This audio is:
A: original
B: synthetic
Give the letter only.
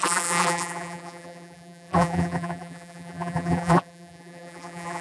B